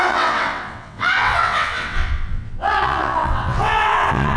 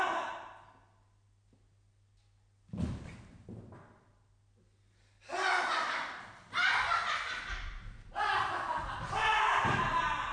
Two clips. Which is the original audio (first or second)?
second